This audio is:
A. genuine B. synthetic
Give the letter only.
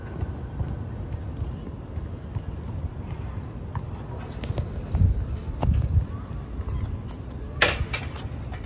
A